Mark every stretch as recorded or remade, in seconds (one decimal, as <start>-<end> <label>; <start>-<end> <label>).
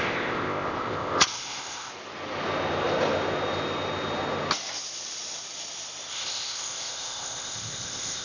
0.0-1.9 remade; 1.9-6.1 recorded; 6.1-8.2 remade